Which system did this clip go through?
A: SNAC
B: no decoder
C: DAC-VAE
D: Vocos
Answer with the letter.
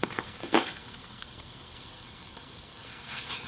A